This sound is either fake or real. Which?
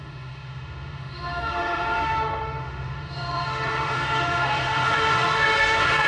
fake